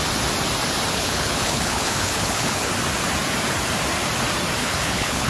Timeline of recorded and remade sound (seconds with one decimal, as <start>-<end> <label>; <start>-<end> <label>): 0.0-0.9 recorded; 0.9-2.7 remade; 2.7-4.6 recorded; 4.6-5.3 remade